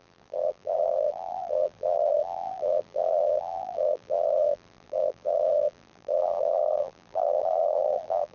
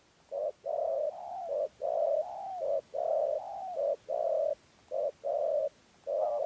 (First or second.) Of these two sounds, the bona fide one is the second